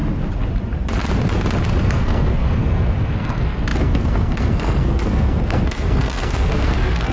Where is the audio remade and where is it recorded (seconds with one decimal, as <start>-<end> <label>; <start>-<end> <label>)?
0.0-1.8 recorded; 1.8-7.1 remade